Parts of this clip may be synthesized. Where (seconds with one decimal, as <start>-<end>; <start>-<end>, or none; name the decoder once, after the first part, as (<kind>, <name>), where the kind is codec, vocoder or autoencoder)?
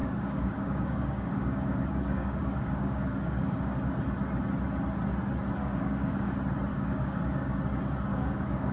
0.0-3.9 (codec, DAC); 5.6-6.3; 6.7-7.6; 8.1-8.7